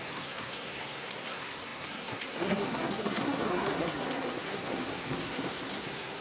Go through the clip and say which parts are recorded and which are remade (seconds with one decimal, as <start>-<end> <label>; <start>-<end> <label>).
0.0-6.2 remade